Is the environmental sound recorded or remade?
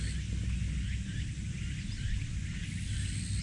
recorded